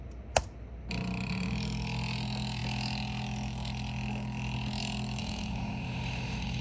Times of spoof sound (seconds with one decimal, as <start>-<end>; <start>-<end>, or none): 5.2-6.6